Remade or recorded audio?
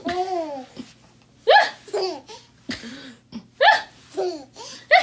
recorded